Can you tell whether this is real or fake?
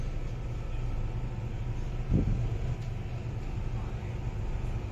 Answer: real